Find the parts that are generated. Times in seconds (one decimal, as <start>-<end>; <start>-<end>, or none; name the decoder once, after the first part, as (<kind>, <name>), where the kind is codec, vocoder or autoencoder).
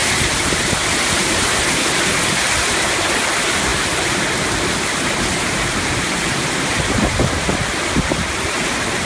0.0-0.6 (vocoder, BigVGAN v2)